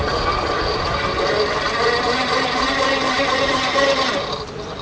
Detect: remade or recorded recorded